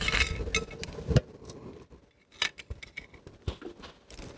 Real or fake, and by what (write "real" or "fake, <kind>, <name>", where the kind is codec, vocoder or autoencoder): real